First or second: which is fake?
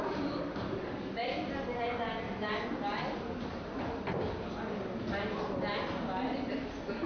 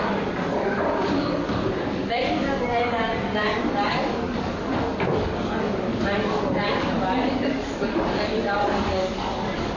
second